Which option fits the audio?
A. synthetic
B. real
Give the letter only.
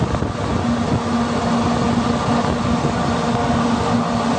B